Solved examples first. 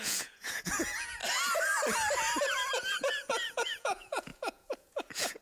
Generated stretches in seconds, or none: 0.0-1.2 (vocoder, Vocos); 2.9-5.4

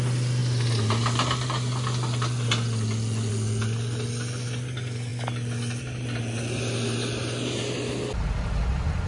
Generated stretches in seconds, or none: none

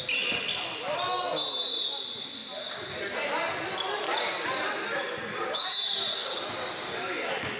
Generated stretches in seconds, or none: 5.2-5.7 (codec, DAC); 6.2-7.6

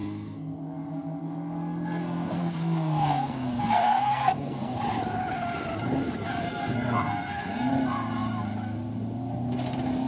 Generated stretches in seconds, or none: 0.0-4.8 (codec, SNAC); 6.4-7.7

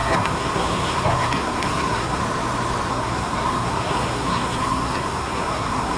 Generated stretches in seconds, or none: 0.0-2.2 (codec, SNAC); 2.9-6.0

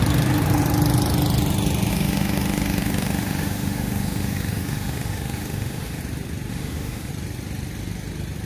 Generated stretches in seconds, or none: 1.9-6.0 (autoencoder, DAC-VAE); 6.5-7.1

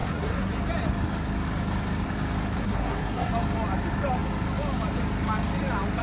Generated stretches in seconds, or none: 0.0-0.5 (codec, SNAC); 2.6-3.3